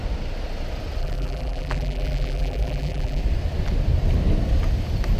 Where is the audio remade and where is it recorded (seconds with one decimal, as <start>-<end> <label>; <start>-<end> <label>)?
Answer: 0.0-1.0 recorded; 1.0-3.2 remade; 3.2-5.2 recorded